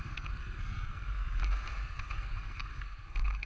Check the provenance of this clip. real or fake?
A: fake